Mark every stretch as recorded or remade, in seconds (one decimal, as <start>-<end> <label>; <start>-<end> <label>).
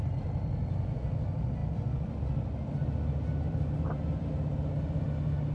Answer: 0.0-5.5 recorded